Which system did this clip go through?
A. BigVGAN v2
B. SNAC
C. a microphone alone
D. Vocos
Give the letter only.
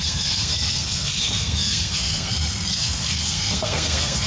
B